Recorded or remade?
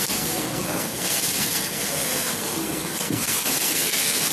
remade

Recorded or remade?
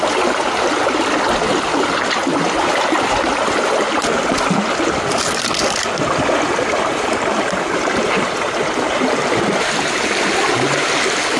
recorded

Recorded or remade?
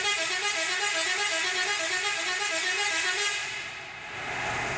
recorded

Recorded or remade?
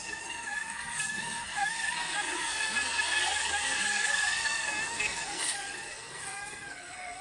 remade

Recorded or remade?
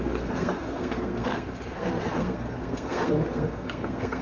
remade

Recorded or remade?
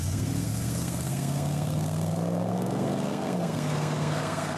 remade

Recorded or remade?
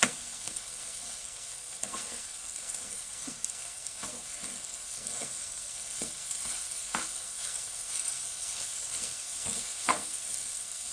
remade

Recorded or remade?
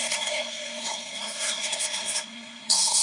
remade